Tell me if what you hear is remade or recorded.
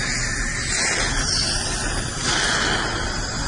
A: recorded